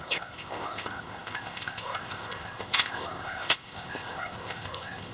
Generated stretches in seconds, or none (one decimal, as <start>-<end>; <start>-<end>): 0.0-5.1